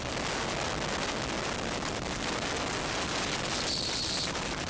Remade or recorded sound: recorded